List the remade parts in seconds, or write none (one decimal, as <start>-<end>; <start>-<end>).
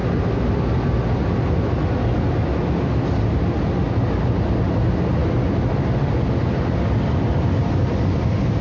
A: none